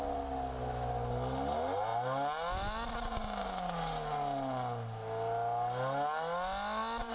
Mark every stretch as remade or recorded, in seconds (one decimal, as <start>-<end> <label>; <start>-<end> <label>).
0.0-7.1 recorded